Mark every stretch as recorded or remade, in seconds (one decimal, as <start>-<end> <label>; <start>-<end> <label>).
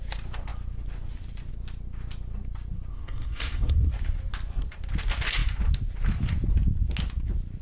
0.0-2.9 recorded; 2.9-3.9 remade; 3.9-7.6 recorded